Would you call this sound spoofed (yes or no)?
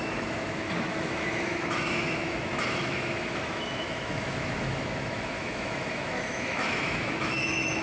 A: yes